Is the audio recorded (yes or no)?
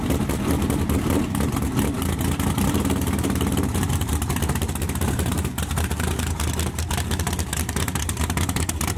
no